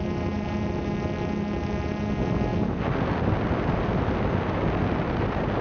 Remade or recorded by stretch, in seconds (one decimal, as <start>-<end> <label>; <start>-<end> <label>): 0.0-5.6 recorded